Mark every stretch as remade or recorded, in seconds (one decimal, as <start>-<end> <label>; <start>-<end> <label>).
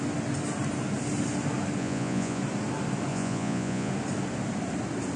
0.0-1.8 recorded; 1.8-2.4 remade; 2.4-3.1 recorded; 3.1-3.9 remade; 3.9-5.2 recorded